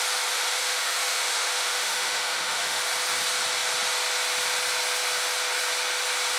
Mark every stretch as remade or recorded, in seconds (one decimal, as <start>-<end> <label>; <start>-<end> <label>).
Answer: 0.0-0.6 recorded; 0.6-2.8 remade; 2.8-6.4 recorded

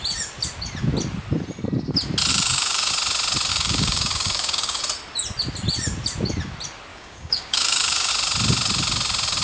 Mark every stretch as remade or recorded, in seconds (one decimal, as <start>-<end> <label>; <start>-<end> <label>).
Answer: 0.0-2.3 recorded; 2.3-2.9 remade; 2.9-3.5 recorded; 3.5-4.8 remade; 4.8-6.9 recorded; 6.9-8.1 remade; 8.1-9.4 recorded

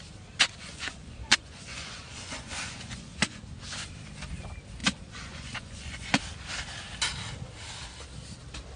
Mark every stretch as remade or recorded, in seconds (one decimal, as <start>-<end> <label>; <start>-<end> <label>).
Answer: 0.0-0.6 recorded; 0.6-3.4 remade; 3.4-4.8 recorded; 4.8-6.2 remade; 6.2-8.8 recorded

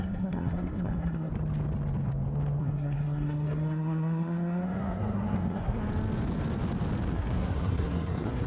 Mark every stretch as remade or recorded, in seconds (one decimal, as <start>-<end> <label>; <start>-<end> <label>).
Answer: 0.0-1.3 remade; 1.3-2.6 recorded; 2.6-5.8 remade; 5.8-7.1 recorded; 7.1-8.5 remade